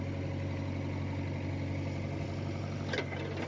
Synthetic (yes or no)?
no